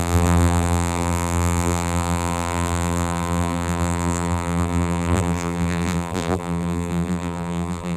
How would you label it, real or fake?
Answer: fake